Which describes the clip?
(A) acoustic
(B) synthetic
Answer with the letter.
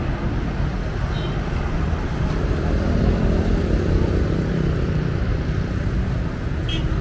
A